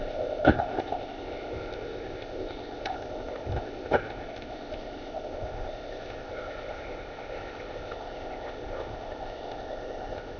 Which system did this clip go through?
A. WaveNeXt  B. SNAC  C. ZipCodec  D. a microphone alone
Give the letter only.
C